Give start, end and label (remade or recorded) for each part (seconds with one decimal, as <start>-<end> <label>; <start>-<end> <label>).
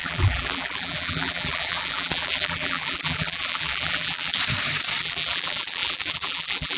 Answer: 0.0-4.4 remade; 4.4-5.0 recorded; 5.0-6.8 remade